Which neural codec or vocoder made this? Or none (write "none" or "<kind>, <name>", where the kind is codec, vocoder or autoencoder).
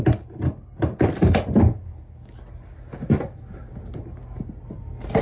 none